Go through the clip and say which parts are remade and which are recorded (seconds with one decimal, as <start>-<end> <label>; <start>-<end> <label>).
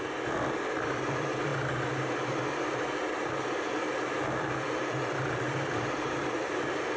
0.0-7.0 remade